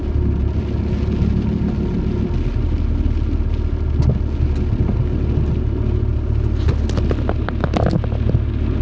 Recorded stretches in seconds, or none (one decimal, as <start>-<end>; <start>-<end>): 0.0-8.8